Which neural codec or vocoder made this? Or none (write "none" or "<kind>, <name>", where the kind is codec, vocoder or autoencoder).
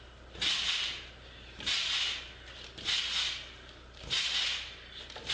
none